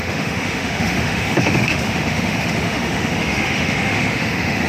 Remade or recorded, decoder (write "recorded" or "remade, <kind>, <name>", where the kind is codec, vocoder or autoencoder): remade, autoencoder, DAC-VAE